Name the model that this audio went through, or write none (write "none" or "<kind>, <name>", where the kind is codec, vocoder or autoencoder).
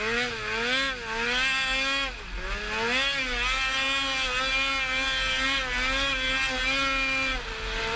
none